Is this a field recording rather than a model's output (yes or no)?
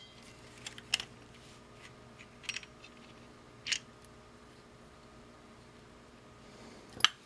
yes